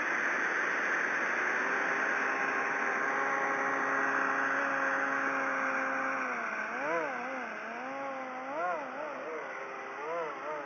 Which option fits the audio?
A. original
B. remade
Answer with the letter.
A